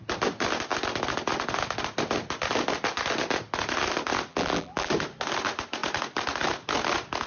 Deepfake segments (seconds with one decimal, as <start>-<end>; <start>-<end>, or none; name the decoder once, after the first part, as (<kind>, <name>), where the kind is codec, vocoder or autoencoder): 4.3-4.9 (vocoder, BigVGAN v2)